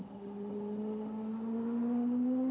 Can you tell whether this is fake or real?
real